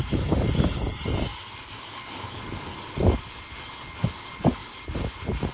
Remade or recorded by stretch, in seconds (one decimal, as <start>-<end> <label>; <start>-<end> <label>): 0.0-4.6 recorded; 4.6-5.5 remade